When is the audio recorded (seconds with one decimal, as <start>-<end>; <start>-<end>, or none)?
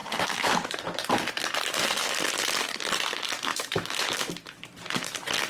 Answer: 0.0-3.5; 4.3-5.5